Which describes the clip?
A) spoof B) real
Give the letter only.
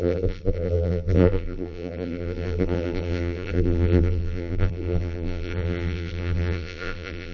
A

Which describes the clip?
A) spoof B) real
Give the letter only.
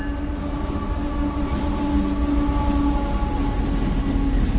B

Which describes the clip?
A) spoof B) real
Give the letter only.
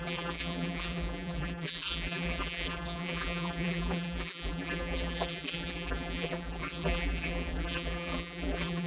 A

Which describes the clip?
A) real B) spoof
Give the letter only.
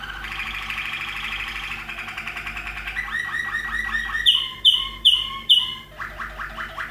B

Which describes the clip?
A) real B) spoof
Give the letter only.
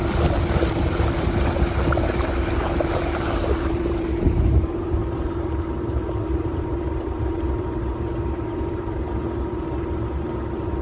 B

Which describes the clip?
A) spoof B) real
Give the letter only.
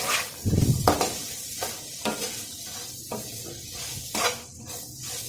B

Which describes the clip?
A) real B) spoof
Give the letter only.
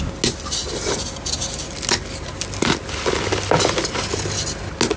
A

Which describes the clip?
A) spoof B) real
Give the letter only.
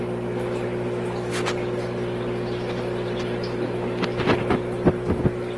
A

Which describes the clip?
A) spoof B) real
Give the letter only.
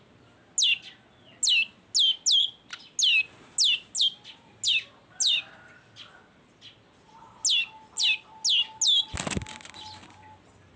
B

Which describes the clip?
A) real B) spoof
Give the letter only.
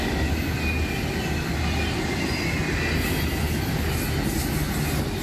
A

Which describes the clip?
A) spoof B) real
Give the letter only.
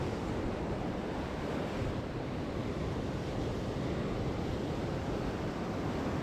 A